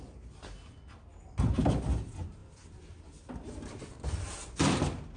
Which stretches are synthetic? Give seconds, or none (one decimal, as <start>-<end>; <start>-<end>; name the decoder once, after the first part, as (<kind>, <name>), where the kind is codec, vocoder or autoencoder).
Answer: none